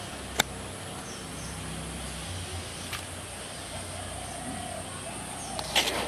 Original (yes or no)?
yes